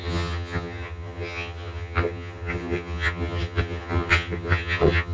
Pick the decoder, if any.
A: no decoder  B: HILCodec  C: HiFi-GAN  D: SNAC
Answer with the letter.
C